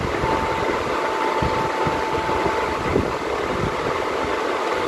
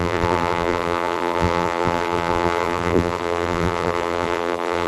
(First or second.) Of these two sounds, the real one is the first